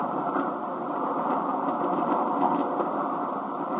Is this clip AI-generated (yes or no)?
no